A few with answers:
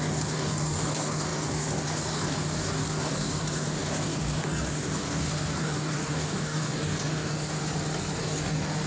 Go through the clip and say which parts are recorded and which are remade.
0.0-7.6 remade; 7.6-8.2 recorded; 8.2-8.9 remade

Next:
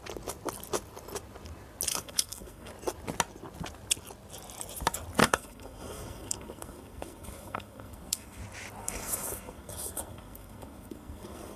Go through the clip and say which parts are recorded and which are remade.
0.0-1.9 recorded; 1.9-2.7 remade; 2.7-5.2 recorded; 5.2-8.4 remade; 8.4-8.8 recorded; 8.8-11.6 remade

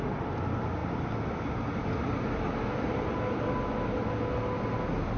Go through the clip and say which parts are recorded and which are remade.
0.0-5.2 recorded

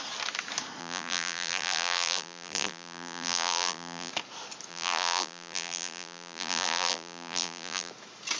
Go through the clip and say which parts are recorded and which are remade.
0.0-0.8 recorded; 0.8-4.1 remade; 4.1-4.7 recorded; 4.7-7.9 remade; 7.9-8.4 recorded

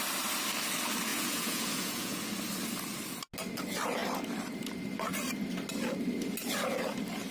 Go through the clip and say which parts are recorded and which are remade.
0.0-1.1 recorded; 1.1-2.2 remade; 2.2-7.3 recorded

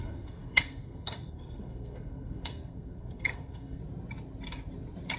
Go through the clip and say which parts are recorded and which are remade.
0.0-3.8 remade; 3.8-5.2 recorded

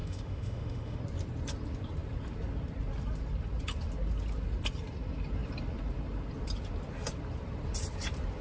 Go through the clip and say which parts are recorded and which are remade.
0.0-1.0 remade; 1.0-8.4 recorded